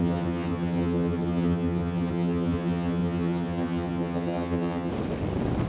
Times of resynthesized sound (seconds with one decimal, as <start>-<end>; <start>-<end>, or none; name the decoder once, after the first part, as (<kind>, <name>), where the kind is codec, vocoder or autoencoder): 0.0-4.9 (vocoder, HiFi-GAN)